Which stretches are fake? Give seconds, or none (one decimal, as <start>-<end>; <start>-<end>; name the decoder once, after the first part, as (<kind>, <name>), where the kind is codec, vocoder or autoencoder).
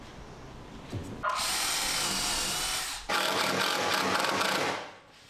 none